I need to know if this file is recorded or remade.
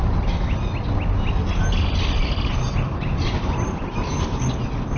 recorded